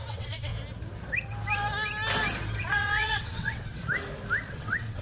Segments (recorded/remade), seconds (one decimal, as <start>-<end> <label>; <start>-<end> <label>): 0.0-0.5 remade; 0.5-2.6 recorded; 2.6-3.8 remade; 3.8-4.5 recorded; 4.5-5.0 remade